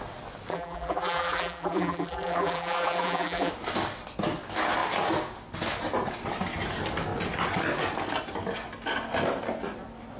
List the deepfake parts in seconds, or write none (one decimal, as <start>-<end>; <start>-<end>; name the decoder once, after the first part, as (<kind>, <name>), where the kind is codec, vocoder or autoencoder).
0.5-3.5 (vocoder, BigVGAN v2)